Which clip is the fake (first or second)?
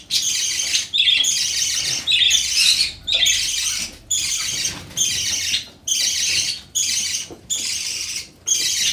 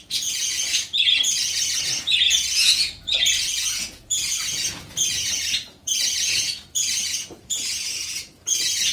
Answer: second